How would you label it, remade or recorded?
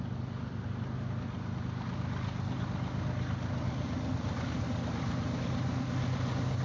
recorded